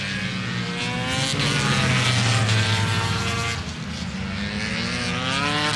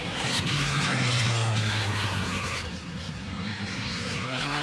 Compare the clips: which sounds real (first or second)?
first